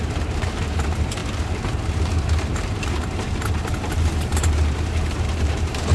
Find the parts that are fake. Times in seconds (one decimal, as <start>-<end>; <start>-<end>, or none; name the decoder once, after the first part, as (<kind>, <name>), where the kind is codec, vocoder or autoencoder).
0.0-5.9 (vocoder, BigVGAN v2)